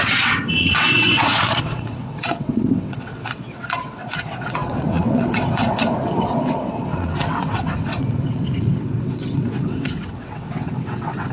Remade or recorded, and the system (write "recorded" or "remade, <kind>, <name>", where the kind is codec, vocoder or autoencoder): remade, vocoder, WaveNeXt